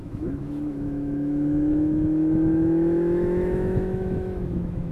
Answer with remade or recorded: remade